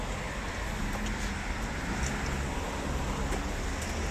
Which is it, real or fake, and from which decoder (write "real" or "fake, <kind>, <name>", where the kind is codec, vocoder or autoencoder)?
real